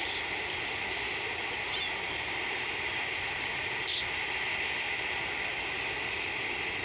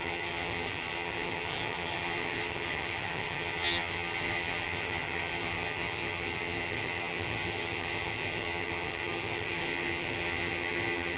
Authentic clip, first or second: first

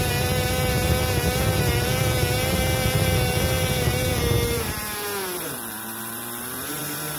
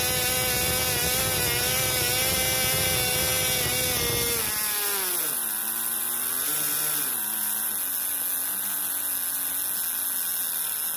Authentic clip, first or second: second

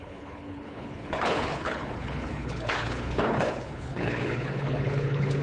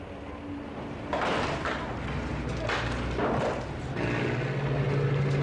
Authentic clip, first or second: second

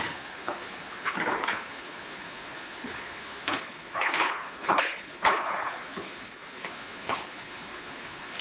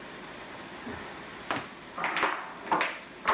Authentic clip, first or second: second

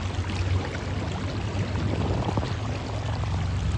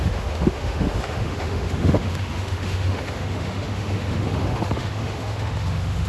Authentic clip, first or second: first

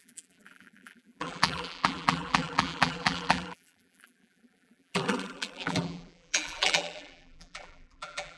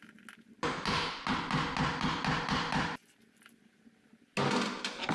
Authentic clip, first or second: second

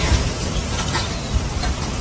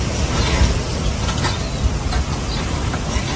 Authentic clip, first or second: second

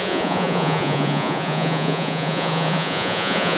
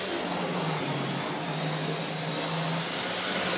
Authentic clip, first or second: second